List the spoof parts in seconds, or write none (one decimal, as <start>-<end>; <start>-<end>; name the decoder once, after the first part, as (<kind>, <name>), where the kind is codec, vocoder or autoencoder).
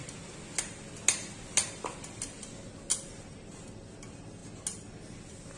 none